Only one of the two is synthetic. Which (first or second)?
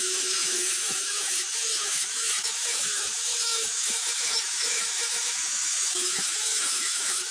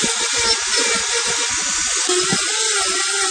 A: first